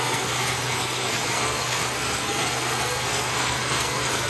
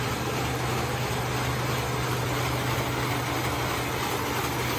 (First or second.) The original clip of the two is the second